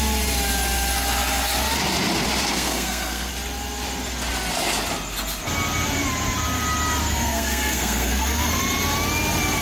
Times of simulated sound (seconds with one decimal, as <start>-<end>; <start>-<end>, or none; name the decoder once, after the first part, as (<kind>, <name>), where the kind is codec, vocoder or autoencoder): 2.5-3.3 (codec, SNAC); 7.0-8.6